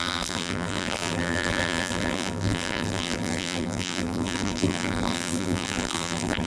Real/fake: fake